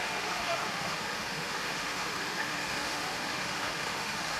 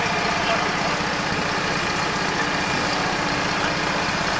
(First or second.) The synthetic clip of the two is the first